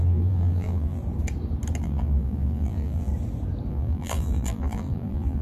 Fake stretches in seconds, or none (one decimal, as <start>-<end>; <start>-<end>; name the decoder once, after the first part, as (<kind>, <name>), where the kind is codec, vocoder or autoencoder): 0.0-1.0 (vocoder, BigVGAN v2); 1.8-3.1; 3.7-5.4